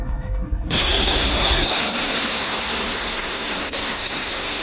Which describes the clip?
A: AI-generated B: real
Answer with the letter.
A